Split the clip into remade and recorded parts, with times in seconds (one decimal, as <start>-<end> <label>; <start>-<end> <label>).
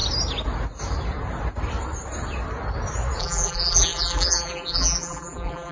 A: 0.0-3.2 recorded; 3.2-5.7 remade